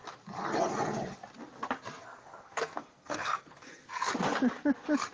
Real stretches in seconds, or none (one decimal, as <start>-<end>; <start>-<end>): 0.0-2.0; 4.1-5.1